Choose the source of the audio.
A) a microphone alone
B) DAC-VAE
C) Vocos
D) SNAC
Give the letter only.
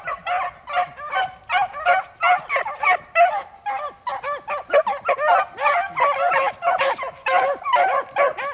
A